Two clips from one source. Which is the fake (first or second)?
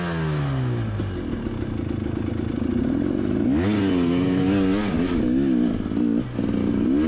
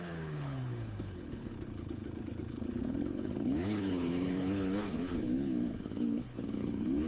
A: second